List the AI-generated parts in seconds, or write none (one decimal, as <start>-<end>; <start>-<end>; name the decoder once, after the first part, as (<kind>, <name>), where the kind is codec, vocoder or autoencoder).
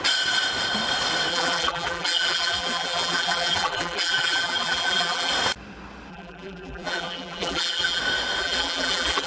1.3-5.3 (vocoder, BigVGAN v2); 6.1-8.0; 8.4-9.3